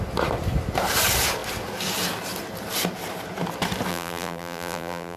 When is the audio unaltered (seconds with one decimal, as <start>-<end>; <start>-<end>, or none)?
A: 0.0-3.9